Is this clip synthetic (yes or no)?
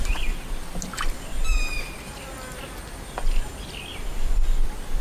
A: no